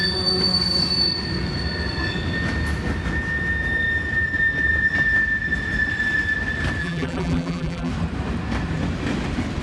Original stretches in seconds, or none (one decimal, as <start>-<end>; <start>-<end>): 0.0-6.8; 7.9-9.6